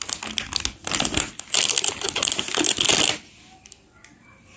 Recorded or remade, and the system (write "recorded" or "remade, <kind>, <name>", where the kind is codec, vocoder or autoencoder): recorded